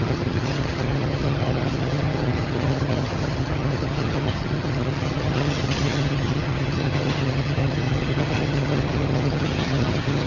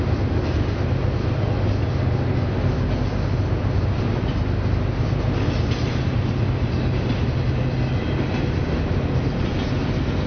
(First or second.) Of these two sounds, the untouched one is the second